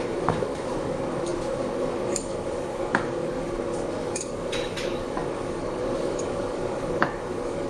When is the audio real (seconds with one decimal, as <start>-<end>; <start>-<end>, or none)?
none